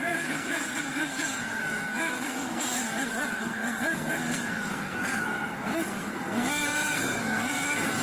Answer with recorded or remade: remade